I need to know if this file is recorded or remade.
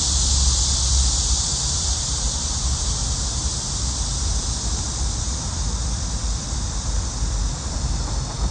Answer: recorded